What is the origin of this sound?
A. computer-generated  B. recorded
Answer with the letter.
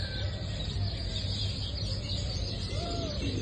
B